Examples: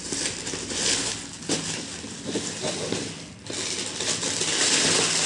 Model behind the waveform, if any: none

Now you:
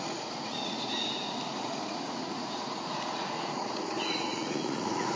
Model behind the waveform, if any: vocoder, Vocos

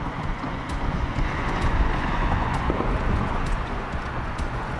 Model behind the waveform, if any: vocoder, Vocos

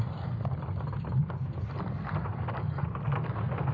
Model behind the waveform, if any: none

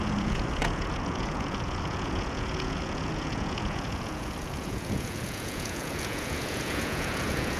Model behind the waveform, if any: vocoder, Vocos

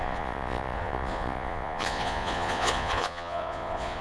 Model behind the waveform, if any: vocoder, Vocos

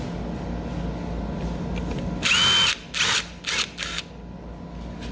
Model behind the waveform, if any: none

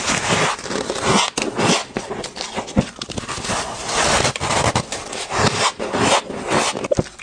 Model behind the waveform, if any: none